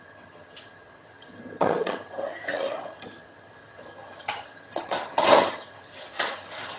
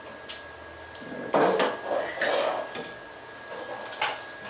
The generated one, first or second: first